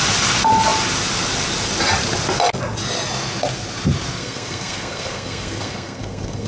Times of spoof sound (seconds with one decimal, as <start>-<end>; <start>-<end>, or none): 4.2-6.5